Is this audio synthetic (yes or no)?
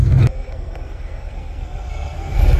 yes